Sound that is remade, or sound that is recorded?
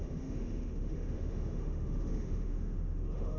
remade